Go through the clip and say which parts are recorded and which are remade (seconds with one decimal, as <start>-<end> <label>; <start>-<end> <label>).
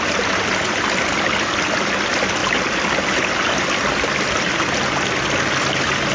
0.0-6.1 recorded